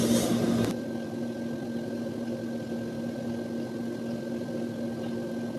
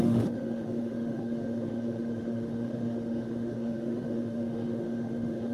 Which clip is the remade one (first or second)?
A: second